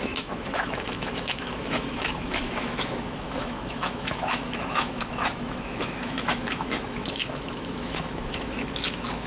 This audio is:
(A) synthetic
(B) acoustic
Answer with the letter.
A